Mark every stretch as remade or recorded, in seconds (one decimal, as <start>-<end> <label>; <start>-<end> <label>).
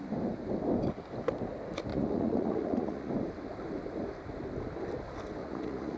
0.0-1.9 recorded; 1.9-3.1 remade; 3.1-5.4 recorded; 5.4-6.0 remade